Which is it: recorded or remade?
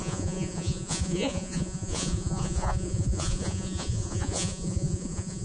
remade